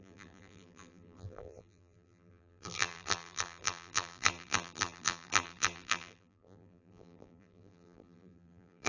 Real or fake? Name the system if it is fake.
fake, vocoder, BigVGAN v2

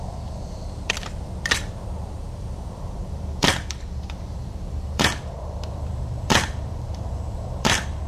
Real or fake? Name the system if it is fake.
fake, vocoder, BigVGAN v2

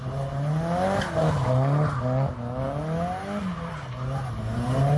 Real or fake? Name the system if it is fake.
real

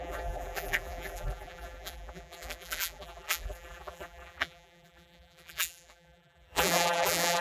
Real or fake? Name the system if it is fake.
fake, vocoder, BigVGAN v2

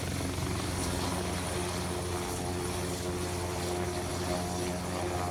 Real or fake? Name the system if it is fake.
real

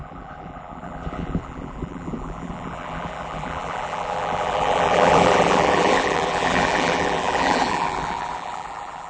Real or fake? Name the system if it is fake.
fake, vocoder, BigVGAN v2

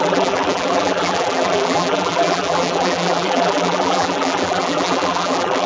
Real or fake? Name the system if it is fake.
fake, vocoder, BigVGAN v2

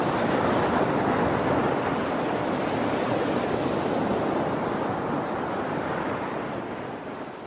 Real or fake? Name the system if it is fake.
real